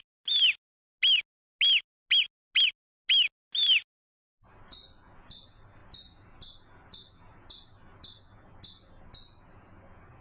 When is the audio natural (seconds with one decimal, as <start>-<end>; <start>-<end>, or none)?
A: 0.0-10.2